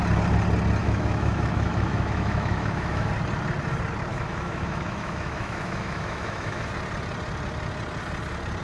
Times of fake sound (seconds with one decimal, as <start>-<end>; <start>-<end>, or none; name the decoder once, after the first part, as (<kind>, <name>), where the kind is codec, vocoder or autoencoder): 0.8-3.1 (autoencoder, DAC-VAE); 4.1-6.7